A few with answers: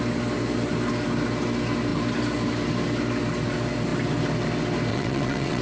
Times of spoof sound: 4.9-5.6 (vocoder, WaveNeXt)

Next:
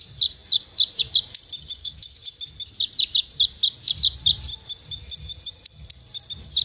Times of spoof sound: 1.8-2.4 (autoencoder, DAC-VAE)

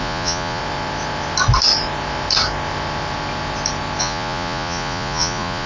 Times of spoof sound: 0.0-0.6 (vocoder, Vocos); 4.0-5.7

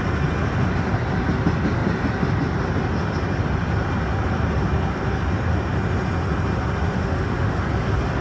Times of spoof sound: 7.0-7.6 (autoencoder, DAC-VAE)

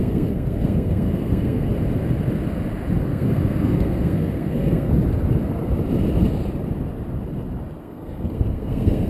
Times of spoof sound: 0.0-1.7 (codec, SNAC); 3.0-4.9; 7.8-9.1

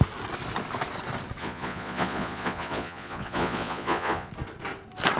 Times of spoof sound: 1.4-4.3 (vocoder, Vocos)

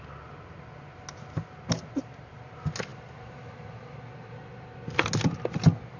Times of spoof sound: 2.9-4.6 (vocoder, BigVGAN v2)

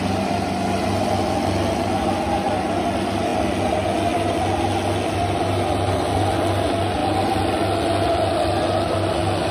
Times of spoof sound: none